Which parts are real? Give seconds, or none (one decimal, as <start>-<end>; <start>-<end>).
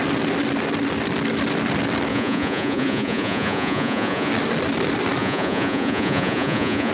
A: 0.0-2.1; 4.3-5.2